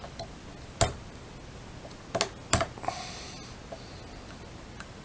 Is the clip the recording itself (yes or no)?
yes